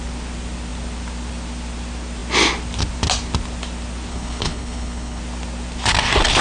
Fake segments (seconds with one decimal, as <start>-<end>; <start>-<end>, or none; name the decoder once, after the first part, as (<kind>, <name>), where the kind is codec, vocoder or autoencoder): 4.1-5.2 (codec, HILCodec)